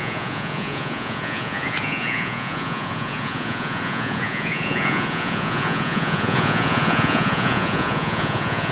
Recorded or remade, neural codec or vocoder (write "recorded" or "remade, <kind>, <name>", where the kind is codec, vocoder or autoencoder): remade, vocoder, Vocos